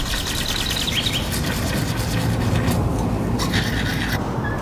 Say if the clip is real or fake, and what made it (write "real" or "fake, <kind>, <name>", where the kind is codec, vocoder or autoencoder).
real